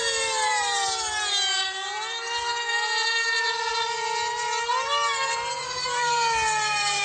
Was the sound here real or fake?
fake